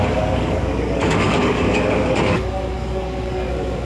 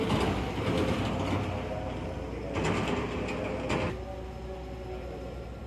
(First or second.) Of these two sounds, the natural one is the second